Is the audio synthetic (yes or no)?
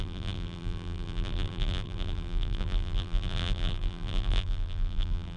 yes